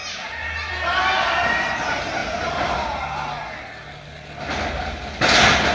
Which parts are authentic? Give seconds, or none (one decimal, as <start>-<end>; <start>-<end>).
0.0-5.7